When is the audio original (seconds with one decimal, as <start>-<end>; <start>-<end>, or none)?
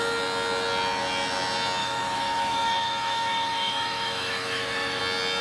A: 0.0-1.8; 5.0-5.4